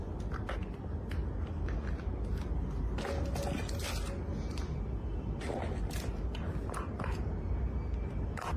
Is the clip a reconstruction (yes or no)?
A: no